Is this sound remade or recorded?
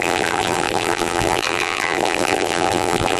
remade